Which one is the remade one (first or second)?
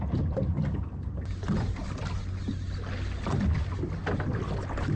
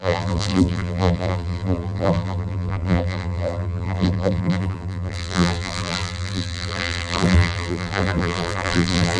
second